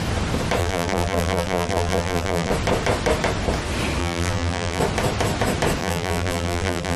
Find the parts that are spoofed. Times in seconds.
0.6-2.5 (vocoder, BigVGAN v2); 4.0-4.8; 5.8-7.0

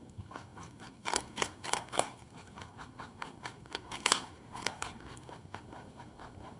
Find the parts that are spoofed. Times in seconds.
0.0-6.6 (codec, SNAC)

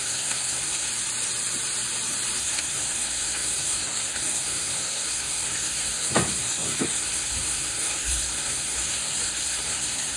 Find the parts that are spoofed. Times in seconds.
0.0-0.9 (codec, SNAC); 2.4-10.2

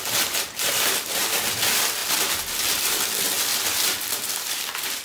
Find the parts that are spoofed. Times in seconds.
0.0-2.0 (vocoder, BigVGAN v2); 2.7-5.0

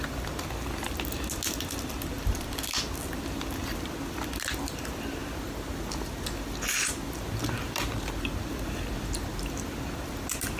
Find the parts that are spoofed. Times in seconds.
none

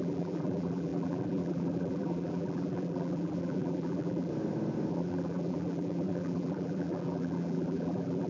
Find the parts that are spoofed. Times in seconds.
0.0-4.3 (vocoder, BigVGAN v2); 4.9-8.3

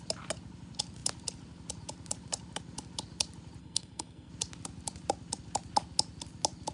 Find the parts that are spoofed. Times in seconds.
3.6-4.3 (codec, SNAC)